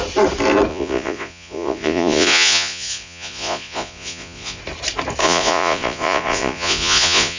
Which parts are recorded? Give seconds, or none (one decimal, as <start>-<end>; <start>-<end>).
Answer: 0.0-0.7; 4.6-5.2